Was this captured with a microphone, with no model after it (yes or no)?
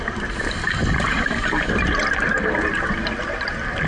yes